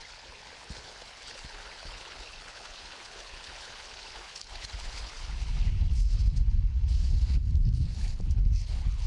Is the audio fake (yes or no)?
yes